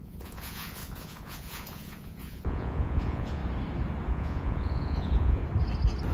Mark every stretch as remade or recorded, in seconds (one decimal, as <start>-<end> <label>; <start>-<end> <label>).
0.0-3.4 remade; 3.4-4.1 recorded; 4.1-5.4 remade; 5.4-6.1 recorded